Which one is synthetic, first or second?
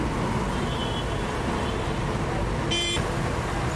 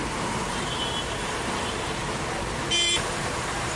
second